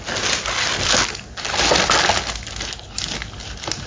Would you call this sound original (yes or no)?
yes